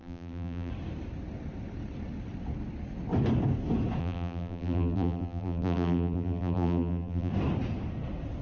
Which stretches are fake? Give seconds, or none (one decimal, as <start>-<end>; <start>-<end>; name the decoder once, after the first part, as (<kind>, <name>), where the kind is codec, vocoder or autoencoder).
0.0-0.7 (vocoder, BigVGAN v2); 4.0-7.3